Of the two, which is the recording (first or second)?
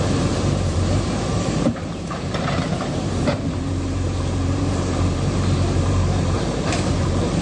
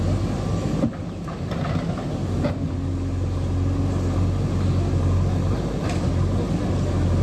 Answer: second